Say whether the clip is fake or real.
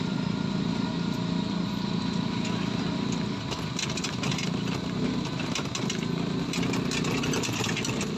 real